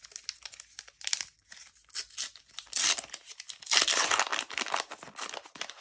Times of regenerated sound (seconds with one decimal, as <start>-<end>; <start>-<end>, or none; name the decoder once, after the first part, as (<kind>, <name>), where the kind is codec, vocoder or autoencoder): none